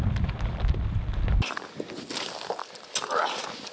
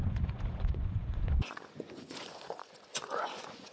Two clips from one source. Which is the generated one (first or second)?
second